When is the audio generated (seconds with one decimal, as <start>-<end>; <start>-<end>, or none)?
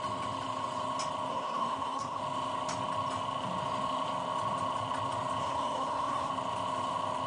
1.3-2.2; 5.4-6.3